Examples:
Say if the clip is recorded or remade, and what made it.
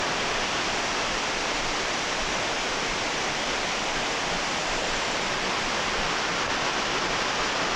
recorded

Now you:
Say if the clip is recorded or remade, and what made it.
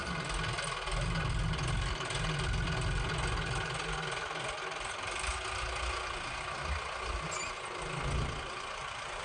recorded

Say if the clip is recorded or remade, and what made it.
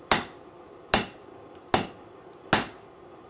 recorded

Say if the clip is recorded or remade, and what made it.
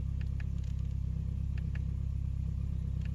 recorded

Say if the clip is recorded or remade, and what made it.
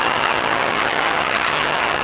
remade, vocoder, HiFi-GAN